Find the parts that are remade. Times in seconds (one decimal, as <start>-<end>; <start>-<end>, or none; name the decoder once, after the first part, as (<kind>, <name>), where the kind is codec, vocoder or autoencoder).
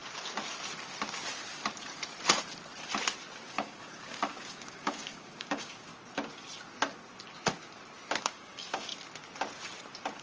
3.5-5.9 (codec, DAC); 8.2-8.9